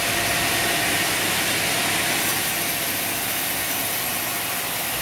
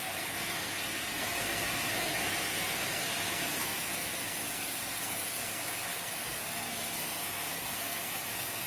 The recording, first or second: first